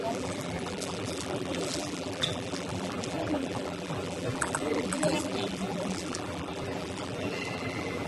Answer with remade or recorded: remade